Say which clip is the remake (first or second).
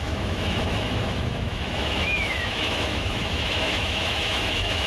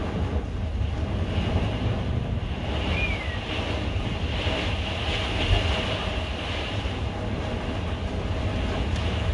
first